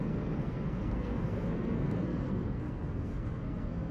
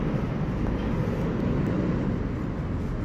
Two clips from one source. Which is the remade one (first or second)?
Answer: first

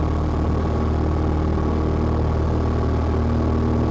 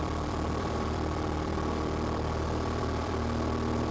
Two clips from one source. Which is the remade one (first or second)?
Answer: second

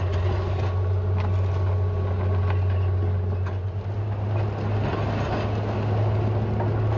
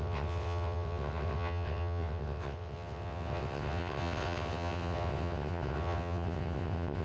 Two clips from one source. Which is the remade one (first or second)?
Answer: second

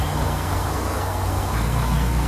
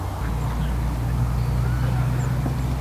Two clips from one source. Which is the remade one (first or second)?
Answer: first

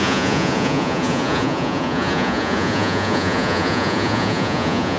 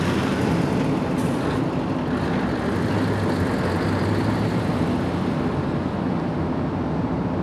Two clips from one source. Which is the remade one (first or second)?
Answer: first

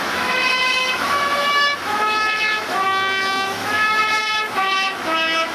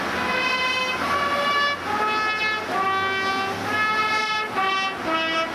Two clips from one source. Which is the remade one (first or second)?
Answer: first